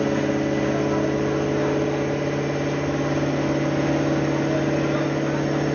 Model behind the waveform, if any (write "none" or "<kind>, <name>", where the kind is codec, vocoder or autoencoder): none